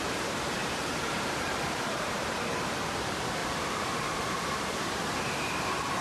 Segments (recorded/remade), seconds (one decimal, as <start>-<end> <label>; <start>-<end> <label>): 0.0-0.6 recorded; 0.6-2.3 remade; 2.3-3.4 recorded; 3.4-4.8 remade; 4.8-6.0 recorded